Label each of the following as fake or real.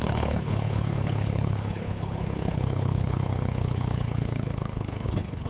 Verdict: fake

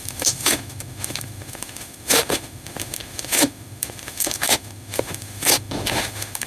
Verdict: fake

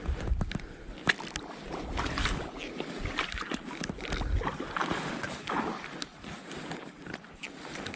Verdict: real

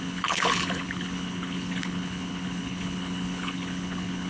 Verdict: fake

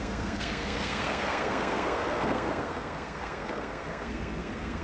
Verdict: fake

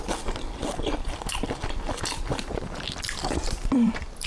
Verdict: fake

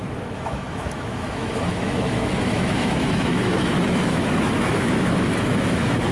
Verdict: fake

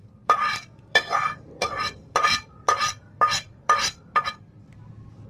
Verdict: fake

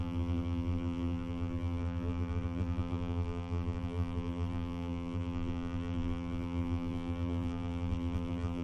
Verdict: fake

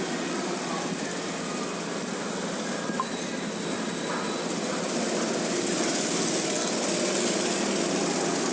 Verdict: real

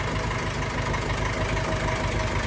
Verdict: real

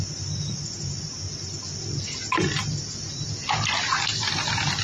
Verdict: real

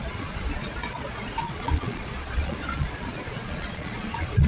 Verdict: fake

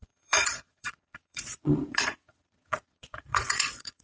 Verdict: fake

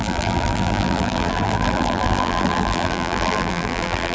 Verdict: fake